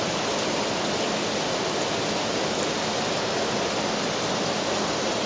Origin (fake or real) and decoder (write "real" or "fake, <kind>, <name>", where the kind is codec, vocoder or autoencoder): real